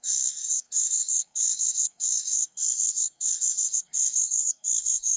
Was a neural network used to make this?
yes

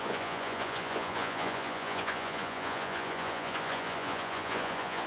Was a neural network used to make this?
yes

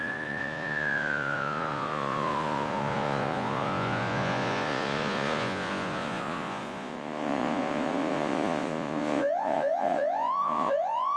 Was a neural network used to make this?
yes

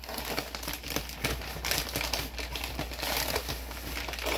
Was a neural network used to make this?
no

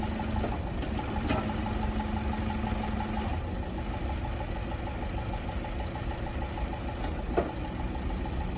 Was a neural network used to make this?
no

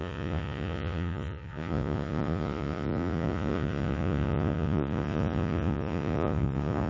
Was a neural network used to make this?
yes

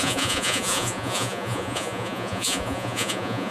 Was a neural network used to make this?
yes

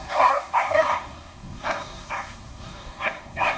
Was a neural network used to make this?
yes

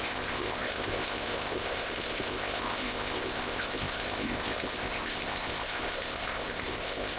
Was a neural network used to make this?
yes